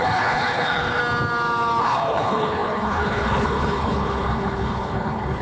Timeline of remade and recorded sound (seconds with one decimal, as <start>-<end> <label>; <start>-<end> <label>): 0.0-1.0 remade; 1.0-1.8 recorded; 1.8-5.4 remade